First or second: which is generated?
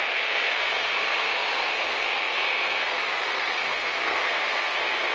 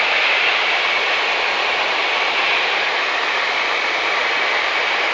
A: first